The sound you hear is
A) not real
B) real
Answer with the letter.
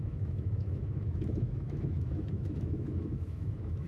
A